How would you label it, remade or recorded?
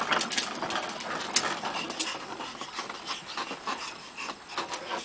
recorded